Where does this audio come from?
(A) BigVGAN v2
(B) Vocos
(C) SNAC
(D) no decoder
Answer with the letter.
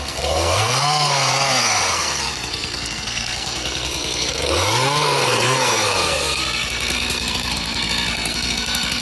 C